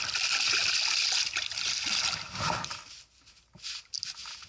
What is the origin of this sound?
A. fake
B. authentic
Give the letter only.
B